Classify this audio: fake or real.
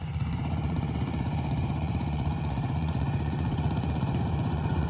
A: fake